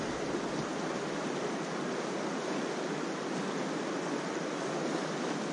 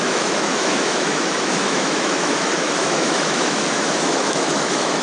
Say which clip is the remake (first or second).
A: second